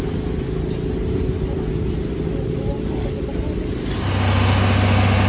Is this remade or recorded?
recorded